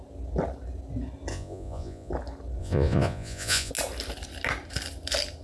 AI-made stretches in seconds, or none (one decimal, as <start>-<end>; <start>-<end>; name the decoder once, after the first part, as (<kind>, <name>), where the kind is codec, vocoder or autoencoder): 1.3-2.1 (vocoder, Vocos); 2.6-3.7